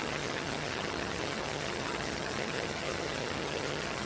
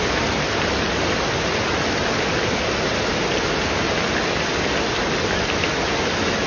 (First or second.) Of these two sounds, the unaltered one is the second